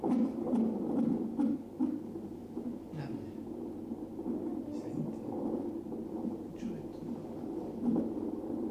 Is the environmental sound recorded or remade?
recorded